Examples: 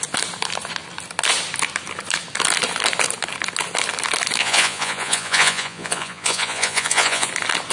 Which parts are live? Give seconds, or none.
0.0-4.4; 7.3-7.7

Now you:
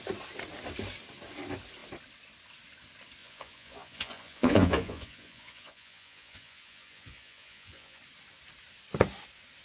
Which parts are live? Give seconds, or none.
0.0-3.2; 8.0-9.6

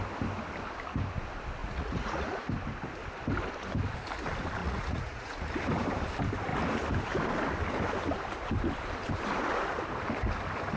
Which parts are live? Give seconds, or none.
0.0-1.6; 2.5-4.6; 5.5-10.8

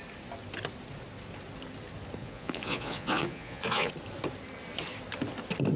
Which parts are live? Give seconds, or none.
0.0-2.2; 3.9-5.8